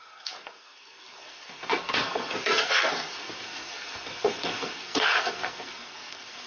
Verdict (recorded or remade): remade